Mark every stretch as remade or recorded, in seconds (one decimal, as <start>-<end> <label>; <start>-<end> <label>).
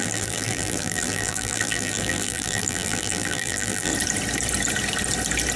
0.0-3.9 remade; 3.9-5.6 recorded